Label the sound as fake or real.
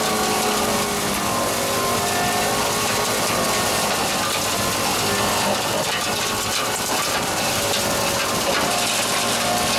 real